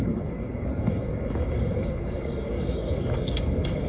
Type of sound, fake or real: fake